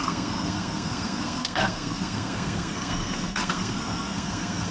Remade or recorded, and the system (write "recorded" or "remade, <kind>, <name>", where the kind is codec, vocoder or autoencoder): remade, codec, SNAC